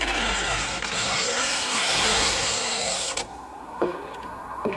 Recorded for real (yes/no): no